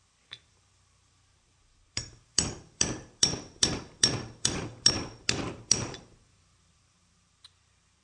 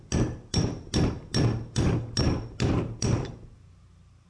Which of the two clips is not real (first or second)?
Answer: first